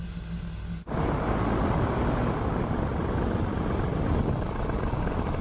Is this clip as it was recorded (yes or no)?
yes